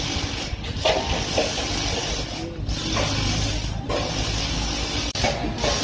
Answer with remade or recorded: recorded